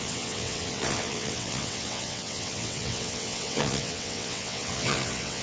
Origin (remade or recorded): remade